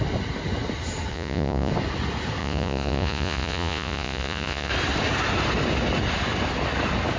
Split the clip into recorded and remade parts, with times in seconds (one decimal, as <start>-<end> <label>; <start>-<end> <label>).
0.0-1.1 recorded; 1.1-1.7 remade; 1.7-2.4 recorded; 2.4-4.7 remade; 4.7-7.2 recorded

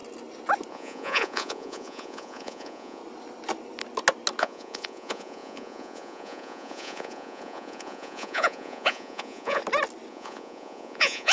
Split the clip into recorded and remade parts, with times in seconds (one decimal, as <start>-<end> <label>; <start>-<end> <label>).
0.0-0.7 recorded; 0.7-3.0 remade; 3.0-4.4 recorded; 4.4-9.6 remade; 9.6-10.1 recorded; 10.1-11.3 remade